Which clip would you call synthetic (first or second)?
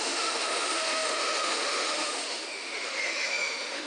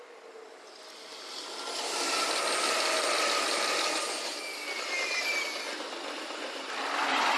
first